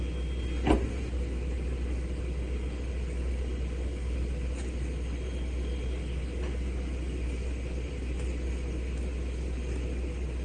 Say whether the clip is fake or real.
real